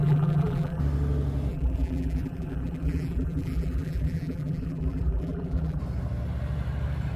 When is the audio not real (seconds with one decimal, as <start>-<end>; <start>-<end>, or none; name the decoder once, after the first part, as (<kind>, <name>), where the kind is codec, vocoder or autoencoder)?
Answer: 0.0-0.8 (vocoder, BigVGAN v2); 1.5-5.8